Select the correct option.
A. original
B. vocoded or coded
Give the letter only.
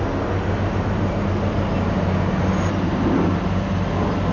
A